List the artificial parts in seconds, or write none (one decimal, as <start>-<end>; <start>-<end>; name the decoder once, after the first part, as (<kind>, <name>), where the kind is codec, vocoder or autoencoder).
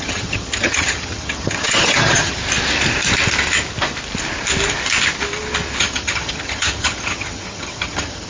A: 0.0-2.4 (vocoder, HiFi-GAN); 5.8-8.3